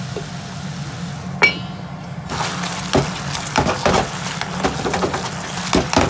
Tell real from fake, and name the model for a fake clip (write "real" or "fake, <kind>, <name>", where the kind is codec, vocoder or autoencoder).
real